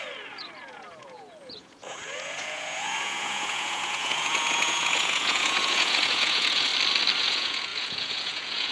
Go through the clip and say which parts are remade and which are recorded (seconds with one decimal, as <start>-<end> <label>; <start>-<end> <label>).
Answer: 0.0-6.7 remade; 6.7-7.2 recorded; 7.2-8.7 remade